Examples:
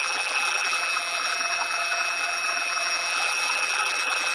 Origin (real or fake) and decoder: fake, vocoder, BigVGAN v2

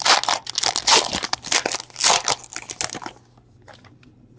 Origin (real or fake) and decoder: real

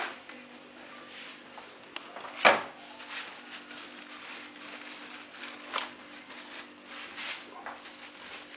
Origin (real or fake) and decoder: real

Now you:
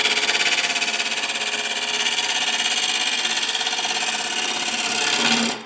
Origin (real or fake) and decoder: real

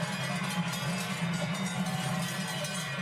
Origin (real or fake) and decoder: real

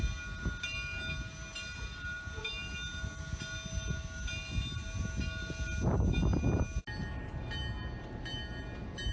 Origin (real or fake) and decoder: real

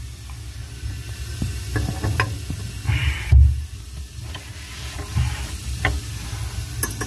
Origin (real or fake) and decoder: real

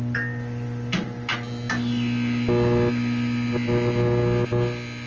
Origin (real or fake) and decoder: real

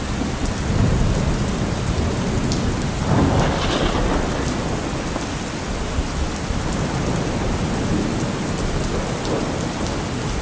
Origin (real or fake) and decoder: real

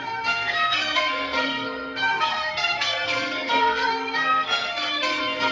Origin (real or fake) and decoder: fake, codec, SNAC